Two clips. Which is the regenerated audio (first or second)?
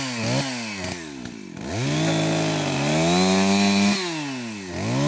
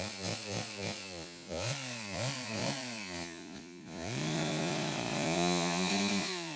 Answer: second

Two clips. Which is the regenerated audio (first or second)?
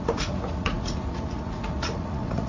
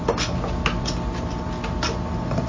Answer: first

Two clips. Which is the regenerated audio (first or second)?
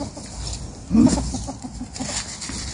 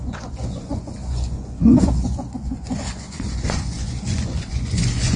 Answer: second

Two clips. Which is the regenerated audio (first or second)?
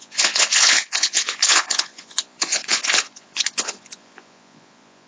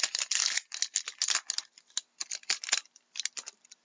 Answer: first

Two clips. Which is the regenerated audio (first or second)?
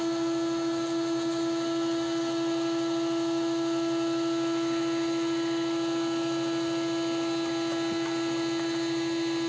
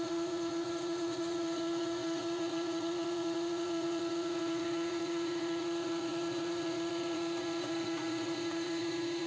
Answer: second